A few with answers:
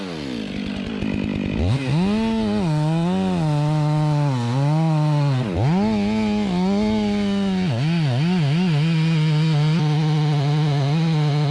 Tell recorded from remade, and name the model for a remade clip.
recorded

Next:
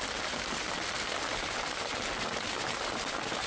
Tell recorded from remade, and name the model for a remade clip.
recorded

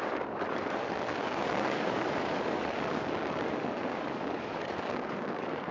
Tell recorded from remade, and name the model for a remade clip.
remade, codec, DAC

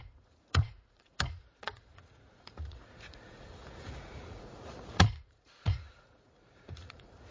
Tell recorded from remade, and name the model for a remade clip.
remade, vocoder, Vocos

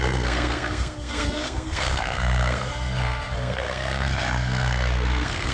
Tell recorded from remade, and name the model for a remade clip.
remade, codec, SNAC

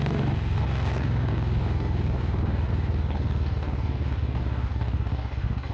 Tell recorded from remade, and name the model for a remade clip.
remade, codec, DAC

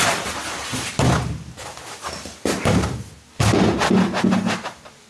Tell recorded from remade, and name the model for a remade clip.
recorded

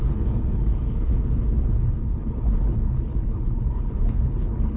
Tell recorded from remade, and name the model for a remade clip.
remade, codec, HILCodec